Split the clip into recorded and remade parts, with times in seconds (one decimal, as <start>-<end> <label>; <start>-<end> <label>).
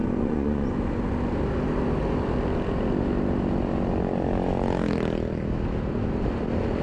0.0-0.7 remade; 0.7-6.8 recorded